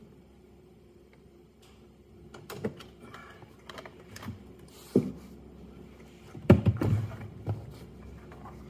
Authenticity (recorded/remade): recorded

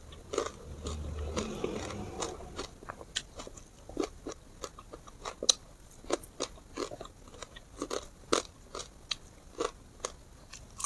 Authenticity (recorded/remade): recorded